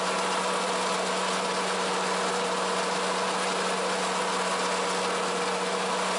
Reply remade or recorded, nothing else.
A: recorded